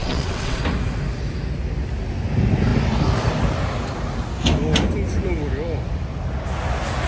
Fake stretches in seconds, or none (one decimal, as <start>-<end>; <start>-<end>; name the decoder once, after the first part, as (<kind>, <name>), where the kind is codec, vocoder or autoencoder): 0.0-0.6 (vocoder, WaveNeXt)